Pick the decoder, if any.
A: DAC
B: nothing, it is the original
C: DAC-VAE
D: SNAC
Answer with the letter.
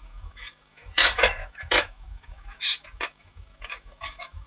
C